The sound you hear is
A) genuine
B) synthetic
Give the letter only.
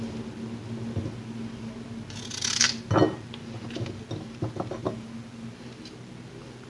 A